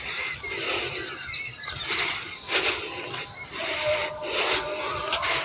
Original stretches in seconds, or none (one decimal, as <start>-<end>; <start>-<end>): 0.0-5.4